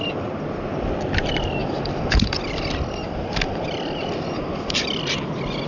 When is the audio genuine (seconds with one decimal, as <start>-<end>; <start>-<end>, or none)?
0.0-1.6; 5.0-5.7